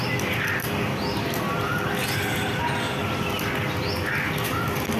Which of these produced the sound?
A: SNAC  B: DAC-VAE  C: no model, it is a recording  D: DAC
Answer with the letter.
C